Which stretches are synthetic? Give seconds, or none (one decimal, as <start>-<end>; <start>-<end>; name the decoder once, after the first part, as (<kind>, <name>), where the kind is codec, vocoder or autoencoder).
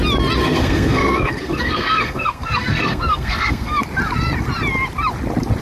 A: 0.4-3.8 (codec, SNAC)